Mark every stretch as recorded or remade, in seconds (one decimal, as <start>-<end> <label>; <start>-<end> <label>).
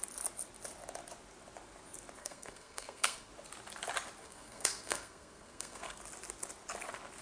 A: 0.0-2.2 recorded; 2.2-3.3 remade; 3.3-4.2 recorded; 4.2-6.0 remade; 6.0-7.2 recorded